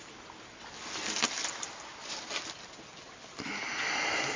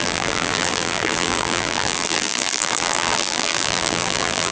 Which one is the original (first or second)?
first